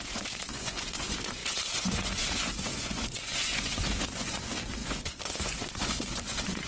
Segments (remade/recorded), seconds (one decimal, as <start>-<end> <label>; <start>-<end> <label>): 0.0-6.7 remade